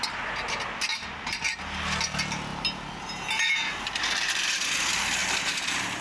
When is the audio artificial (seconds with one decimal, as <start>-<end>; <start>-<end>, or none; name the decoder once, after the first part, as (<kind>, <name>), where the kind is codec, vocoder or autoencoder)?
0.9-1.4 (vocoder, BigVGAN v2); 5.2-6.0